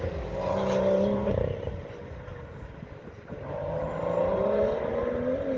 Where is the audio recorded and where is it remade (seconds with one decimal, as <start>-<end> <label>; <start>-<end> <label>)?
0.0-2.3 recorded; 2.3-3.8 remade; 3.8-4.3 recorded; 4.3-5.1 remade; 5.1-5.6 recorded